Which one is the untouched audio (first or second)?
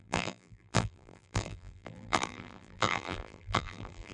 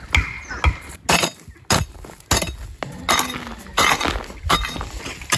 second